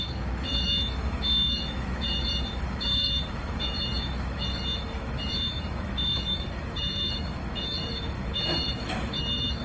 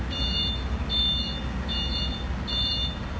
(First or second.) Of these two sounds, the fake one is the first